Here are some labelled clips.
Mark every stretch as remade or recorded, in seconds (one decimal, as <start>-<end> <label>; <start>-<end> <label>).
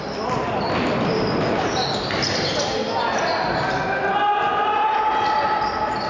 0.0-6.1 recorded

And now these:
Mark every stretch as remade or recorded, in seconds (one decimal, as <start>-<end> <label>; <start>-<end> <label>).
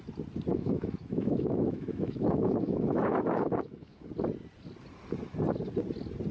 0.0-0.5 recorded; 0.5-4.1 remade; 4.1-6.3 recorded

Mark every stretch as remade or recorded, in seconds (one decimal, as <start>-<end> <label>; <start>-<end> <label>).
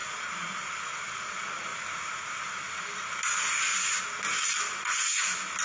0.0-0.7 remade; 0.7-5.6 recorded